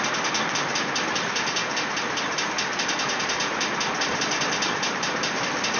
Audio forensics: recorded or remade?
recorded